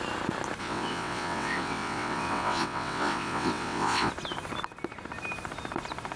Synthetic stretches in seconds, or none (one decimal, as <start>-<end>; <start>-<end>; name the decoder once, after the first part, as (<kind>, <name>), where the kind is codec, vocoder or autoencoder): 0.6-4.1 (vocoder, WaveNeXt)